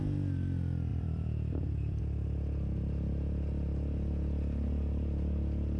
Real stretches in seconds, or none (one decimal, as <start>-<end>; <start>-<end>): 0.0-0.9; 2.0-5.8